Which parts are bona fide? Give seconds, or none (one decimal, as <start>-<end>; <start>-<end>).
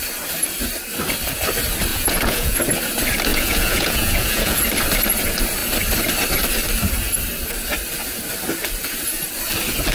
0.0-1.9; 2.6-3.3; 4.6-9.9